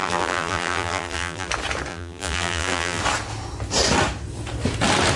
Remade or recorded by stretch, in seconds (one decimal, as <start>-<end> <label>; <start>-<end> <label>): 0.0-1.5 remade; 1.5-1.9 recorded; 1.9-3.0 remade; 3.0-5.2 recorded